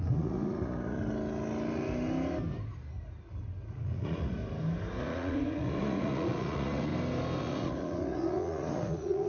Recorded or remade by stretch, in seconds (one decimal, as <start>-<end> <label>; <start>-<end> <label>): 0.0-1.0 remade; 1.0-3.7 recorded; 3.7-4.4 remade; 4.4-5.0 recorded; 5.0-6.9 remade; 6.9-7.4 recorded; 7.4-9.3 remade